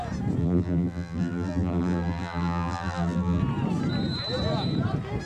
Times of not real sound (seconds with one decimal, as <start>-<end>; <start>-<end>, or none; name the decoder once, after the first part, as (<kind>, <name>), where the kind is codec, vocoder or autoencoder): 0.4-3.4 (vocoder, BigVGAN v2)

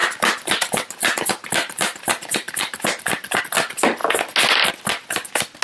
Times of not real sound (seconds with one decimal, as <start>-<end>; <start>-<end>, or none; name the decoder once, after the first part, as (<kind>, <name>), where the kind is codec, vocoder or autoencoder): 0.0-3.4 (vocoder, BigVGAN v2)